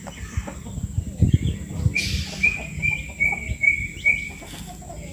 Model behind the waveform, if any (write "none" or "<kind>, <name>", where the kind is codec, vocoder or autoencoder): none